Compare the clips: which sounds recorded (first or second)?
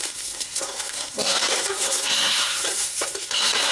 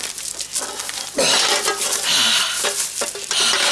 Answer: second